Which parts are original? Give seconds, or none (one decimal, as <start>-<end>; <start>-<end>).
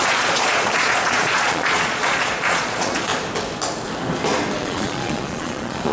3.1-4.6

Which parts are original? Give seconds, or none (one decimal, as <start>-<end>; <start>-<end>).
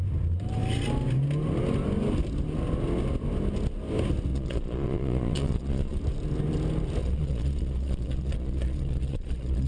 0.0-4.3; 6.0-7.0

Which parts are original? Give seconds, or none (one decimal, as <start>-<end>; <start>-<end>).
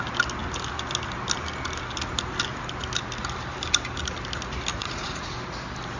0.0-4.7; 5.4-6.0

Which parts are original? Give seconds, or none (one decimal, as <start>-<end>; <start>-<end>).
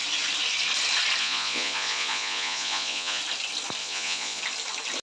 0.0-1.2; 3.2-3.8; 4.4-5.0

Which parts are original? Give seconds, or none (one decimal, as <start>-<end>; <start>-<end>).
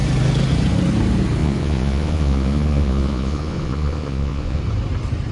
0.0-1.4; 4.6-5.3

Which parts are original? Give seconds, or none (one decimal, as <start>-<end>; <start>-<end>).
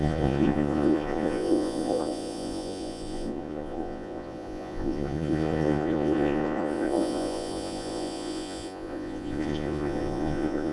none